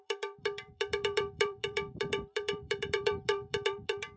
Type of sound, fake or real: fake